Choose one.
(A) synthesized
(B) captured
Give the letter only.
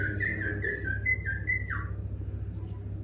B